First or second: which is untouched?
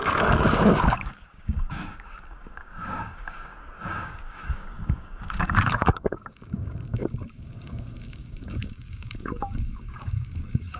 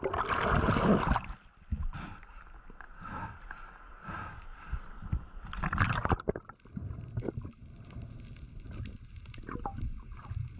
second